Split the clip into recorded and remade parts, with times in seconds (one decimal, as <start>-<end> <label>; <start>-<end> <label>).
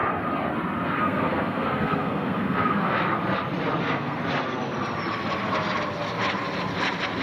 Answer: 0.0-1.0 recorded; 1.0-2.9 remade; 2.9-3.8 recorded; 3.8-4.2 remade; 4.2-7.2 recorded